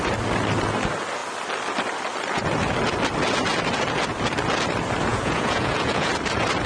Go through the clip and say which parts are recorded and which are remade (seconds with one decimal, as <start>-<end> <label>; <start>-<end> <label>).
0.0-5.1 recorded; 5.1-6.1 remade; 6.1-6.7 recorded